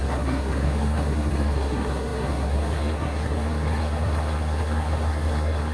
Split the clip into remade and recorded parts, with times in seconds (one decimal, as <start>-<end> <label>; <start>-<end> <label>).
0.0-5.7 remade